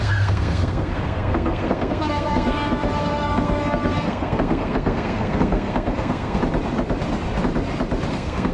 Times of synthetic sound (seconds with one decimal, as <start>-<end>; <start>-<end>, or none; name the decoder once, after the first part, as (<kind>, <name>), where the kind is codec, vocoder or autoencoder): 0.0-6.4 (codec, SNAC); 8.1-8.5